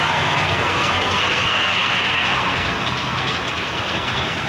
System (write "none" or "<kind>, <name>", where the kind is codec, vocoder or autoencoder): codec, SNAC